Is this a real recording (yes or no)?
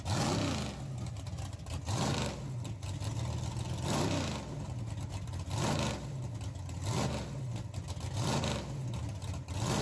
yes